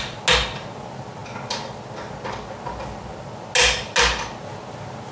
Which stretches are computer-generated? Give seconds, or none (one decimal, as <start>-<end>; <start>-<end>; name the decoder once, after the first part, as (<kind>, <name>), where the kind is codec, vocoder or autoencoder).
none